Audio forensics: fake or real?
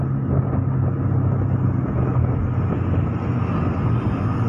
real